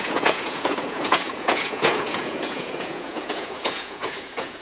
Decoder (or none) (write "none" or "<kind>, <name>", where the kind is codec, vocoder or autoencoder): vocoder, Vocos